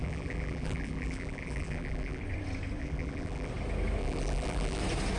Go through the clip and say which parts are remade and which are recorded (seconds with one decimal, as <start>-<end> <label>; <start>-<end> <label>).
0.0-2.2 remade; 2.2-2.8 recorded; 2.8-3.5 remade; 3.5-4.0 recorded; 4.0-4.8 remade; 4.8-5.2 recorded